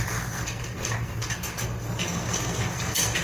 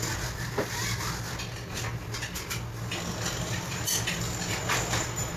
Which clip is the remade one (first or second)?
first